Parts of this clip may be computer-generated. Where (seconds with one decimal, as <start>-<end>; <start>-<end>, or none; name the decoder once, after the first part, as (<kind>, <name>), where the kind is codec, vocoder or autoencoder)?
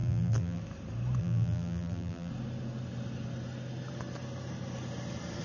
0.0-0.6 (vocoder, BigVGAN v2); 1.2-2.3